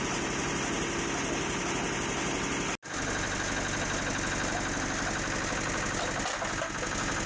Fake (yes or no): no